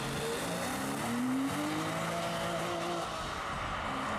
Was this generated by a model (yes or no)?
no